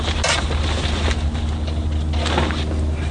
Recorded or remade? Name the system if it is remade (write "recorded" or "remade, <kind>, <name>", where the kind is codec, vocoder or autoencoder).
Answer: recorded